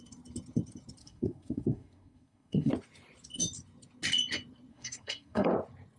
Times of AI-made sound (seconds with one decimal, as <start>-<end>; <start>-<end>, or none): 1.0-2.7; 4.7-5.5